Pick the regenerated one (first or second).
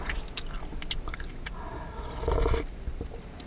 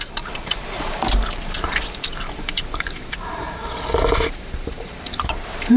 second